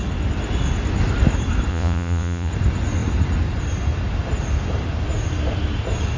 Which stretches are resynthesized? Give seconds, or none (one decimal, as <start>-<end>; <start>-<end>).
1.7-2.5